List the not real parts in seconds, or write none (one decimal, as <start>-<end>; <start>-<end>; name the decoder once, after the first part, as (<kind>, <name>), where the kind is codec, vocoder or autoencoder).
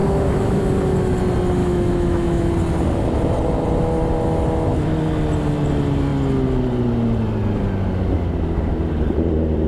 0.0-0.6 (autoencoder, DAC-VAE); 1.6-2.5